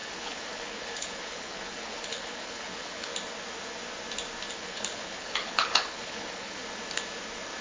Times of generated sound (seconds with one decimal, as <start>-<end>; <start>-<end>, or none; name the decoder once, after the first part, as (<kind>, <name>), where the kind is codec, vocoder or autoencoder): 0.0-3.1 (codec, HILCodec); 4.5-6.6